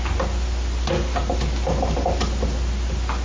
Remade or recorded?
recorded